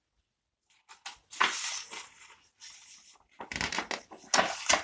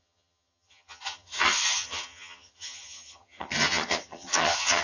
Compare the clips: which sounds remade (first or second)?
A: second